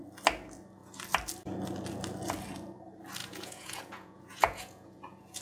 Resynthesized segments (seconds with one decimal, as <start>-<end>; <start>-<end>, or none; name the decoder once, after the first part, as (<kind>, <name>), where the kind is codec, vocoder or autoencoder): 3.2-5.4 (vocoder, Vocos)